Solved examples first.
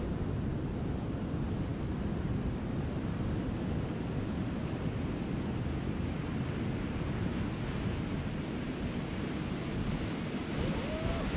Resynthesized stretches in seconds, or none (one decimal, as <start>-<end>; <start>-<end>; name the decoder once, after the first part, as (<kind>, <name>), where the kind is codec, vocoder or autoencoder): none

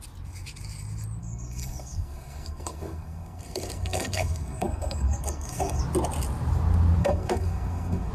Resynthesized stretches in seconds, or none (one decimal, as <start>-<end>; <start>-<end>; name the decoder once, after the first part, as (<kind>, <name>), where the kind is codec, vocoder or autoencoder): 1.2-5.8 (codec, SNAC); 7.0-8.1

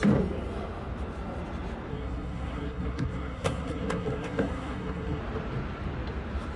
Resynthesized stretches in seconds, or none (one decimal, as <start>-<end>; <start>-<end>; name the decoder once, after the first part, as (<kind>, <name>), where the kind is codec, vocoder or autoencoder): 1.9-5.2 (codec, SNAC)

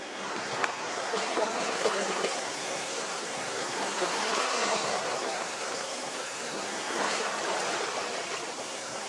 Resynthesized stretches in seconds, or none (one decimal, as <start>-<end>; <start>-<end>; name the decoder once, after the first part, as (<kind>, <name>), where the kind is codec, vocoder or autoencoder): 0.0-7.3 (codec, SNAC); 8.6-9.1

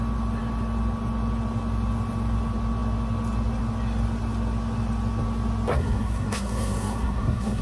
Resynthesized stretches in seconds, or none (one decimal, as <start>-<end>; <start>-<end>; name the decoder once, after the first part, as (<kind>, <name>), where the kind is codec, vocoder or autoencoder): 5.7-7.6 (codec, SNAC)

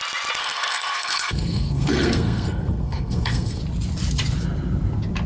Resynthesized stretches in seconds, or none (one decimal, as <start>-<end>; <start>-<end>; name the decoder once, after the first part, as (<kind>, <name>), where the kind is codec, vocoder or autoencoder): 0.4-3.6 (codec, SNAC)